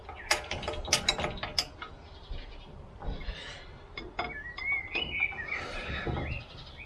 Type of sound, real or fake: real